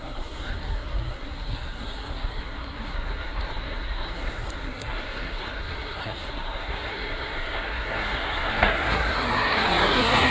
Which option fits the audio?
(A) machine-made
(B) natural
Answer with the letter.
A